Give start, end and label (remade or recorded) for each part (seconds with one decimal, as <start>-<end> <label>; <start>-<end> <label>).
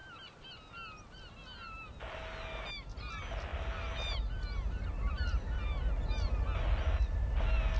0.0-7.8 recorded